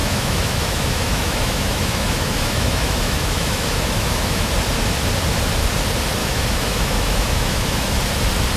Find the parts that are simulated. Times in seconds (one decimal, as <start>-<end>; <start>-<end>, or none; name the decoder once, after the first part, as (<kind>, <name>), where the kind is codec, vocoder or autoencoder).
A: 0.0-4.5 (autoencoder, DAC-VAE); 6.2-8.0